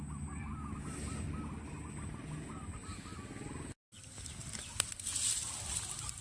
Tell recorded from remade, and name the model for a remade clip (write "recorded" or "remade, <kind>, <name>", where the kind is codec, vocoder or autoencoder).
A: recorded